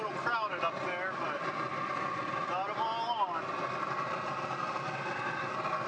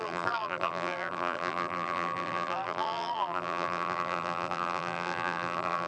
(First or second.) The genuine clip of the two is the first